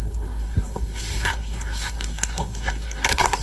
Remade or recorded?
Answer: remade